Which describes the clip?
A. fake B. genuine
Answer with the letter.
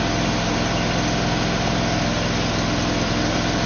B